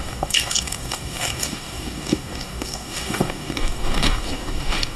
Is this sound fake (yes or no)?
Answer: yes